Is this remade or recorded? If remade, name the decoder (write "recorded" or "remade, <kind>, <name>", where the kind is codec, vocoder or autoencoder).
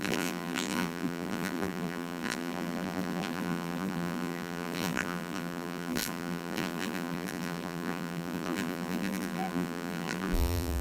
remade, vocoder, BigVGAN v2